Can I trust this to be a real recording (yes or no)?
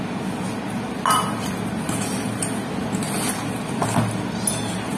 yes